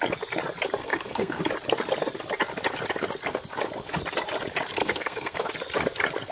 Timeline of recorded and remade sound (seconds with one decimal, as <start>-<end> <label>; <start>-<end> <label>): 0.0-0.8 recorded; 0.8-1.4 remade; 1.4-4.8 recorded; 4.8-5.5 remade; 5.5-6.3 recorded